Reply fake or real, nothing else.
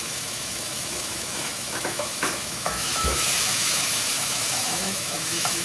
fake